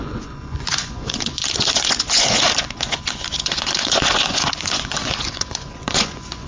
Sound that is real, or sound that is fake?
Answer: fake